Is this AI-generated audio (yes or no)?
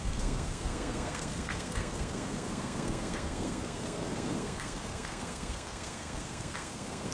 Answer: yes